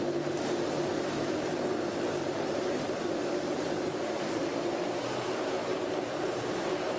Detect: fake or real fake